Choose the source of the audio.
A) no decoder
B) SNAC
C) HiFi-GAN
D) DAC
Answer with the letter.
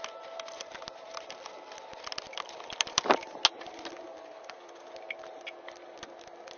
A